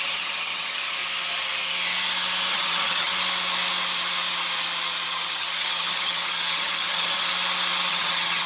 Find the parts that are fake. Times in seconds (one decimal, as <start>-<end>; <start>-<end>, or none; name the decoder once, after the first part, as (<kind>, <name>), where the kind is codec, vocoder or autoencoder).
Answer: 0.0-1.0 (vocoder, HiFi-GAN); 2.5-3.1; 5.1-7.3; 7.9-8.5